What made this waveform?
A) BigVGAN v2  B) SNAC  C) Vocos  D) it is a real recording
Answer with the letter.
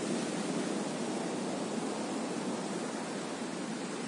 D